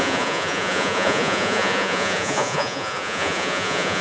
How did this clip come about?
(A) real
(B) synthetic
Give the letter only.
B